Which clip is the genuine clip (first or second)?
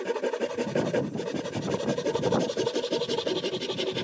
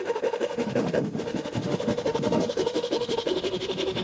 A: first